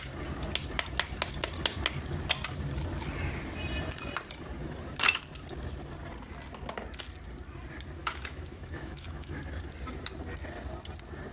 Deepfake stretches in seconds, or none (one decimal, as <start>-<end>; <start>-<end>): 8.0-9.4